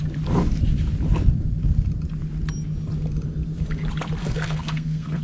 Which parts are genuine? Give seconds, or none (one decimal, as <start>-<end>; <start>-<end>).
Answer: 0.0-4.2

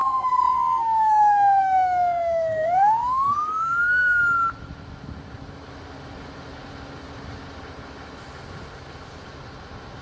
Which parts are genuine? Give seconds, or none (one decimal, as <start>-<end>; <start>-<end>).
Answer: 4.2-10.0

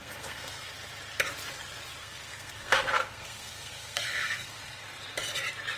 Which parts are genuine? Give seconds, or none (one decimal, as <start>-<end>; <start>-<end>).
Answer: 0.7-2.0; 4.8-5.8

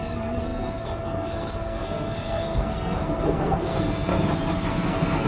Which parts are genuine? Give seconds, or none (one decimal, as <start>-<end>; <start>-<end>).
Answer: 4.1-4.7